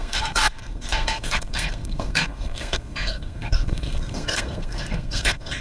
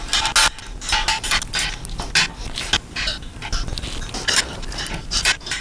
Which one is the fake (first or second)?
first